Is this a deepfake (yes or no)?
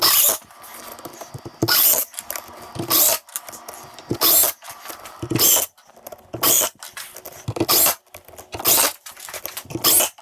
no